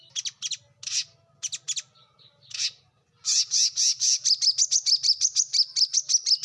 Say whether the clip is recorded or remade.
recorded